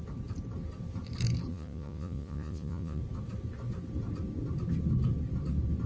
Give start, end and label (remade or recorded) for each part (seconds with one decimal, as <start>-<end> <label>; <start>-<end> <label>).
0.0-1.5 recorded; 1.5-3.0 remade; 3.0-5.9 recorded

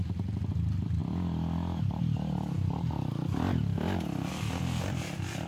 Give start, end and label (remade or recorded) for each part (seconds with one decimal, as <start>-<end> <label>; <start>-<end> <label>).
0.0-5.5 recorded

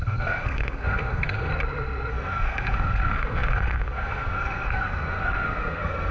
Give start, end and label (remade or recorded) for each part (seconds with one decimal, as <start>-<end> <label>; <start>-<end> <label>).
0.0-1.5 remade; 1.5-2.1 recorded; 2.1-6.1 remade

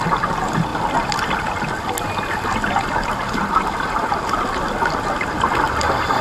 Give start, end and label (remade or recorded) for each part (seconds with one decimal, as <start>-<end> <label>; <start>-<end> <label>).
0.0-6.2 recorded

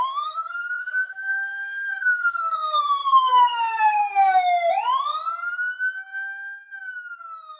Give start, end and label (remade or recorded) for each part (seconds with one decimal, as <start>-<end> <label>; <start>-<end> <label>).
0.0-4.0 remade; 4.0-7.6 recorded